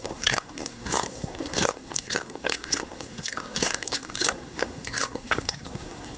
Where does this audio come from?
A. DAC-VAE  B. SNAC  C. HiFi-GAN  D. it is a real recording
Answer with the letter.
B